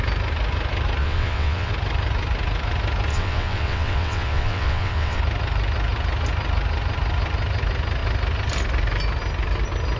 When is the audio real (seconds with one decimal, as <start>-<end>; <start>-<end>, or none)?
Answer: 0.0-1.0; 1.7-3.1; 5.2-10.0

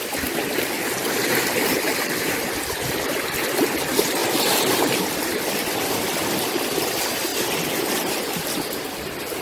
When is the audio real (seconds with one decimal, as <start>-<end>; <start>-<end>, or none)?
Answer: 0.0-1.2; 2.4-4.2; 5.4-9.4

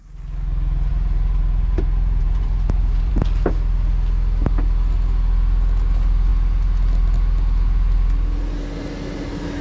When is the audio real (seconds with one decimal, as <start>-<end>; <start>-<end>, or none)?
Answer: 0.0-0.9; 3.1-9.6

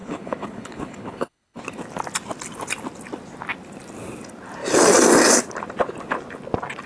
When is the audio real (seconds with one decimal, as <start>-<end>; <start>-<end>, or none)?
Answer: 1.6-6.9

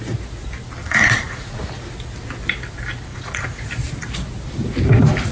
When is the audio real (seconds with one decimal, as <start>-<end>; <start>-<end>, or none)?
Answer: 0.0-0.8; 1.6-3.1; 3.7-5.3

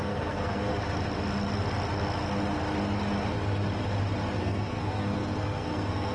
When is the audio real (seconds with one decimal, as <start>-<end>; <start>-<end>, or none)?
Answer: 0.7-4.4